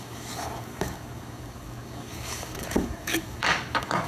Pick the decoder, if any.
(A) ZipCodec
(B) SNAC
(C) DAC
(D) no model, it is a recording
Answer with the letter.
C